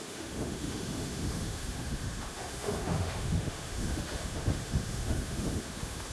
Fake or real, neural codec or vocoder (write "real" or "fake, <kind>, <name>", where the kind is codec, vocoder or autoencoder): fake, autoencoder, DAC-VAE